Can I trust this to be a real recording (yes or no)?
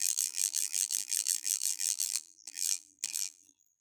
no